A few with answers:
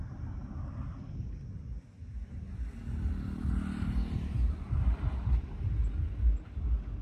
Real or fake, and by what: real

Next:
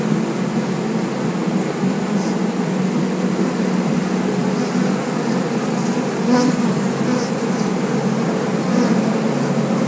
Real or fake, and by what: real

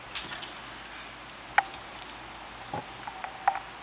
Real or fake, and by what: real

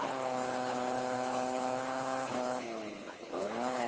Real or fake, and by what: fake, codec, HILCodec